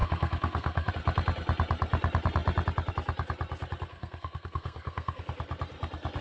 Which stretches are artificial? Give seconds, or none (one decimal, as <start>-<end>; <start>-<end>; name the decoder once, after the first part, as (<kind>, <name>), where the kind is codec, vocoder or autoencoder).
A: 0.0-0.9 (codec, SNAC); 3.9-5.2

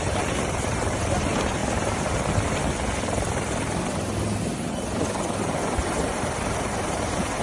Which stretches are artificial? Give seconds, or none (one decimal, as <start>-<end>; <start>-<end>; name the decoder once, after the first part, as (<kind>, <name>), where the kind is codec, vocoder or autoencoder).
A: 0.0-1.6 (vocoder, BigVGAN v2); 6.0-7.4

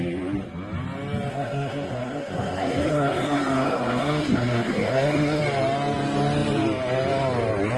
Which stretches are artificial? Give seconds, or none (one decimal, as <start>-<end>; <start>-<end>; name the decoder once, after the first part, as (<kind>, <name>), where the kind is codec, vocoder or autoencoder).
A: 1.3-5.4 (codec, SNAC)

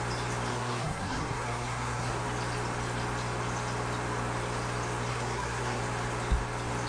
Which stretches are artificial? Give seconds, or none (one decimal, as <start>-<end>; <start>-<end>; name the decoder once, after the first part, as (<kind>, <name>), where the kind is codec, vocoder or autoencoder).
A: 0.5-2.2 (codec, SNAC); 5.1-5.8